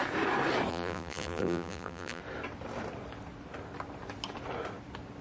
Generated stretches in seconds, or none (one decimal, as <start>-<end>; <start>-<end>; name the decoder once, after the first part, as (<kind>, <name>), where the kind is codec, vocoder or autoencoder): 0.7-2.2 (vocoder, BigVGAN v2)